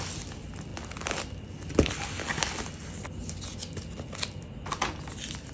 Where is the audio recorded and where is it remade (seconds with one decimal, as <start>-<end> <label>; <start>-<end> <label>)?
0.0-5.5 recorded